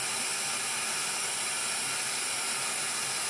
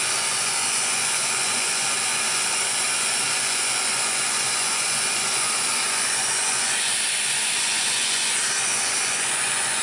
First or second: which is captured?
first